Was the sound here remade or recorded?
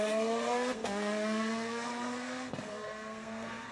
remade